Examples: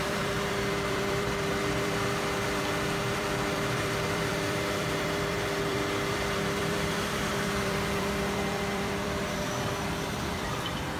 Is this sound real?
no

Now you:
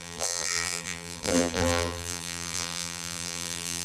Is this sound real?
no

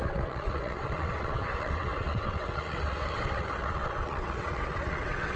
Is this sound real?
no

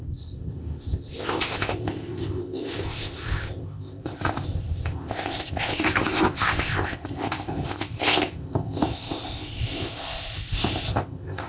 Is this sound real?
no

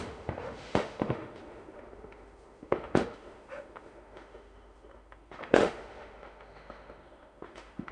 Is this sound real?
no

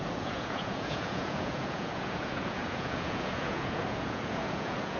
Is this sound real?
no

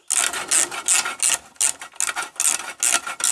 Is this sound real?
yes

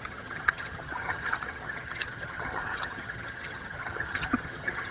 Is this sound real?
no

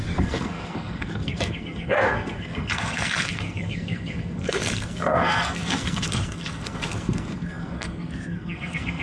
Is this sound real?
no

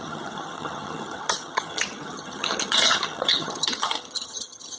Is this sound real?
no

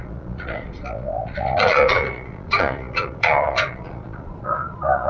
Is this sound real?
no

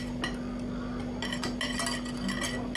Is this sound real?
yes